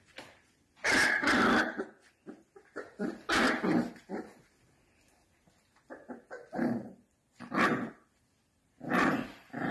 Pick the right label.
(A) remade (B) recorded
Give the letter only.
B